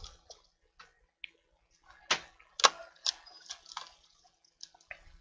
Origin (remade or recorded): recorded